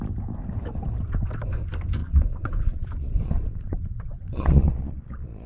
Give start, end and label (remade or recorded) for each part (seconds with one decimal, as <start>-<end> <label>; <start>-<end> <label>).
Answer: 0.0-2.0 recorded; 2.0-5.5 remade